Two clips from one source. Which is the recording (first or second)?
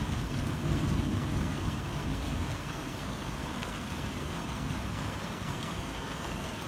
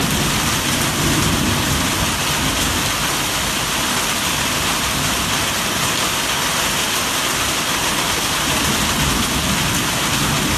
second